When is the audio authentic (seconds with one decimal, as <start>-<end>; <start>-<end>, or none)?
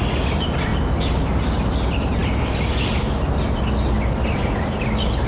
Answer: 0.0-5.3